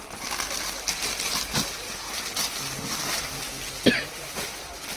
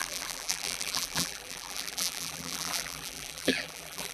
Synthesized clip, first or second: second